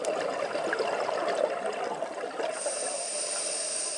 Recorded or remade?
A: recorded